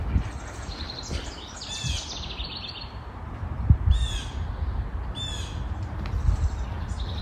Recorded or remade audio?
recorded